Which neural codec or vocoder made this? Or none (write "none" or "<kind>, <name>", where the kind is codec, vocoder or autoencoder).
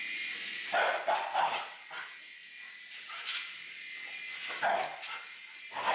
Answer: none